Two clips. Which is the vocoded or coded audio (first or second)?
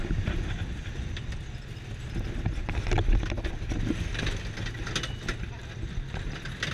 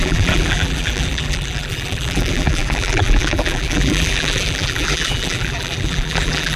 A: second